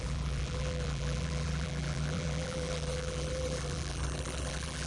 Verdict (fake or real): fake